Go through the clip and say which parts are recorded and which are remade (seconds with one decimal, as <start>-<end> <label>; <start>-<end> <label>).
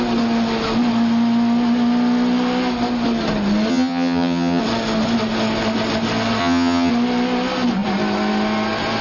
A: 0.0-3.7 recorded; 3.7-4.6 remade; 4.6-6.4 recorded; 6.4-6.9 remade; 6.9-9.0 recorded